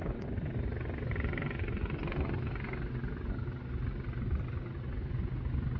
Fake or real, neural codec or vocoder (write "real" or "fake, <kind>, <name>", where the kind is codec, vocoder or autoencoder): real